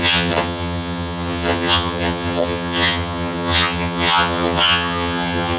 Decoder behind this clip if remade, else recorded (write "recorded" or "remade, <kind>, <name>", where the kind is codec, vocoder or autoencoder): remade, vocoder, HiFi-GAN